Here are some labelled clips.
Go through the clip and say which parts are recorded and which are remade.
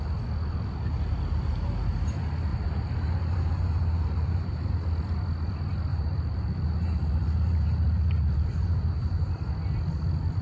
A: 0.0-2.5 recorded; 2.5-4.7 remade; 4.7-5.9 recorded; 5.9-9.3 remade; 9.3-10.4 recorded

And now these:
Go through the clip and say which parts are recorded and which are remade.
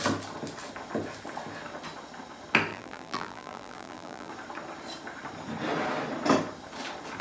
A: 0.0-2.7 recorded; 2.7-4.3 remade; 4.3-7.2 recorded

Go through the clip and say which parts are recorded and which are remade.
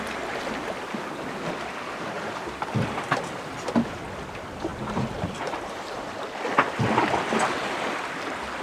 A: 0.0-4.7 recorded; 4.7-6.1 remade; 6.1-8.6 recorded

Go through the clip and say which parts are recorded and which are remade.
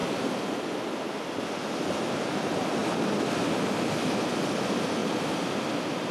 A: 0.0-2.8 recorded; 2.8-3.4 remade; 3.4-5.0 recorded; 5.0-6.1 remade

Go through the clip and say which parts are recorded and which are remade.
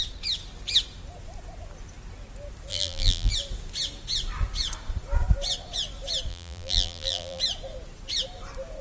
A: 0.0-2.7 recorded; 2.7-3.3 remade; 3.3-6.3 recorded; 6.3-7.4 remade; 7.4-8.8 recorded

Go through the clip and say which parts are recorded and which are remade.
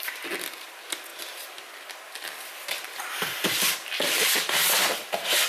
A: 0.0-5.5 recorded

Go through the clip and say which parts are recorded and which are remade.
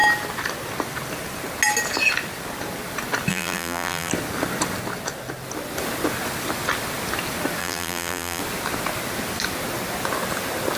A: 0.0-3.3 recorded; 3.3-4.1 remade; 4.1-7.6 recorded; 7.6-8.4 remade; 8.4-10.8 recorded